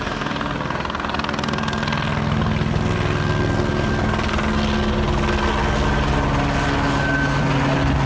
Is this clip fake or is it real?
real